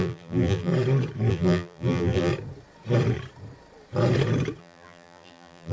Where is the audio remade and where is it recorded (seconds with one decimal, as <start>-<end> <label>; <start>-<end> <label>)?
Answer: 0.0-0.7 remade; 0.7-1.3 recorded; 1.3-2.3 remade; 2.3-4.6 recorded; 4.6-5.7 remade